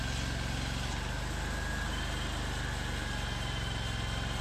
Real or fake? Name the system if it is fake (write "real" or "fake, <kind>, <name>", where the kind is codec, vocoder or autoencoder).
real